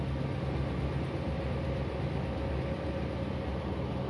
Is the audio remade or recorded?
recorded